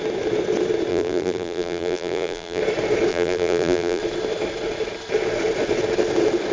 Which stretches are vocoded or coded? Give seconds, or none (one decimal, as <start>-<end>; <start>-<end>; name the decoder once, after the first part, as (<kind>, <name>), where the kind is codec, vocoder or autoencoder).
0.9-2.6 (vocoder, BigVGAN v2); 3.1-4.0